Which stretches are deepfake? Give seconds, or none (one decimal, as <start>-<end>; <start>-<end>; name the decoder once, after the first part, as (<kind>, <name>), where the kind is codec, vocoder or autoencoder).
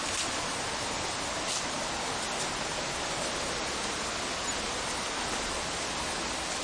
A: 0.0-1.4 (vocoder, BigVGAN v2)